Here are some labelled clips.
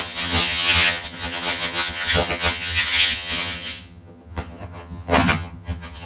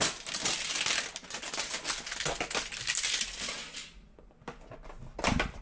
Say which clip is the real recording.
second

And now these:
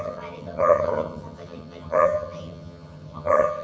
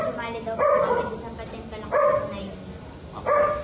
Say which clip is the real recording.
second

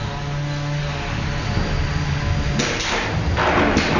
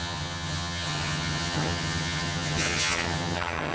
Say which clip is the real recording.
first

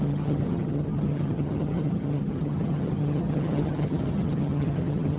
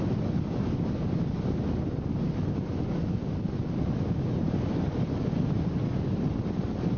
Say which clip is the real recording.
second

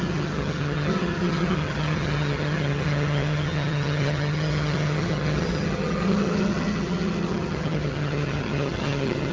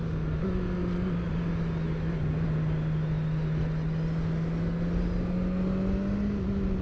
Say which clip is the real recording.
second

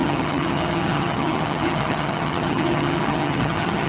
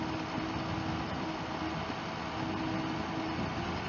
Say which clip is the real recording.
second